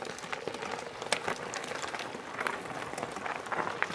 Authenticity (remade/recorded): recorded